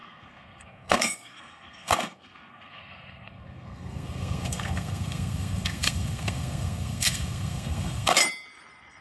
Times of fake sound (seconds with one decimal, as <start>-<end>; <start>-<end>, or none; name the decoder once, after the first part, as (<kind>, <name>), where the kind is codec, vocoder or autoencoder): 0.0-8.2 (codec, SNAC)